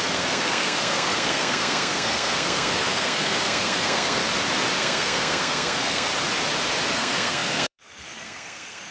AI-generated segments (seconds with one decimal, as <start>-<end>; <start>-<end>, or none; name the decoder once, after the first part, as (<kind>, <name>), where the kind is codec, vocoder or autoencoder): 0.0-4.2 (codec, SNAC); 4.8-6.1; 6.9-8.9